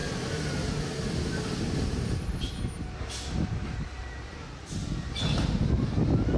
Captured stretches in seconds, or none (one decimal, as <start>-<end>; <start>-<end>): 0.0-4.0; 4.6-6.4